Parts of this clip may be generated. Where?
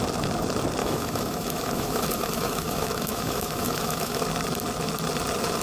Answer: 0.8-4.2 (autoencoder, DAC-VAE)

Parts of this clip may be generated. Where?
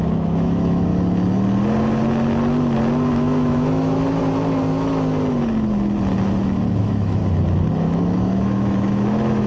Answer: 0.0-0.9 (autoencoder, DAC-VAE); 3.1-4.2; 6.8-7.2; 7.8-9.5